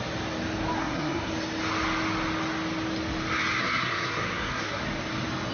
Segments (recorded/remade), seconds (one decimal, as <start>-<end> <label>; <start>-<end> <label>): 0.0-0.8 recorded; 0.8-1.3 remade; 1.3-3.6 recorded; 3.6-4.8 remade; 4.8-5.5 recorded